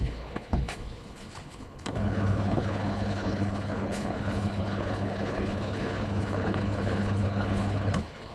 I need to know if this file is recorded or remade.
remade